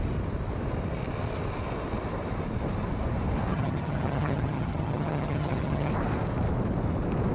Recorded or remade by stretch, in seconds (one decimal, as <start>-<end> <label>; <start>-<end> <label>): 0.0-3.5 recorded; 3.5-5.9 remade; 5.9-7.3 recorded